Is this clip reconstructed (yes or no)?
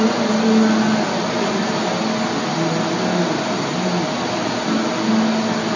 no